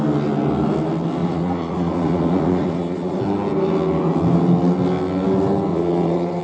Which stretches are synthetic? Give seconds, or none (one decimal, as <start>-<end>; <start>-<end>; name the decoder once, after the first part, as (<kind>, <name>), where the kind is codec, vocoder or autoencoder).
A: 1.2-3.2 (vocoder, Vocos); 5.7-6.4